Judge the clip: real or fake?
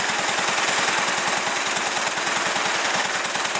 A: real